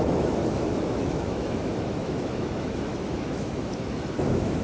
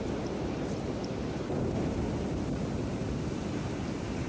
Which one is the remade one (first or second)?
first